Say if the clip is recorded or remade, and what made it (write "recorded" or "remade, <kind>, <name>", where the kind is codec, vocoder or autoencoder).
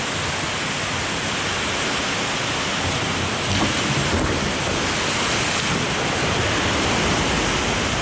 recorded